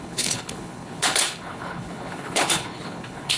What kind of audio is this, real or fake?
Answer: fake